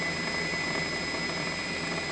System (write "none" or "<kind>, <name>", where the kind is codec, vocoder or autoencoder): none